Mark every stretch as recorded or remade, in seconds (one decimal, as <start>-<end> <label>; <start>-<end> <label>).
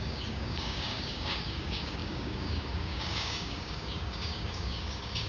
0.0-5.3 remade